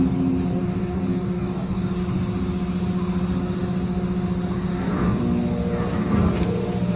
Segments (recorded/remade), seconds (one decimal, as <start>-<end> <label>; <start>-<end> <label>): 0.0-0.5 recorded; 0.5-2.0 remade; 2.0-4.7 recorded; 4.7-5.2 remade; 5.2-7.0 recorded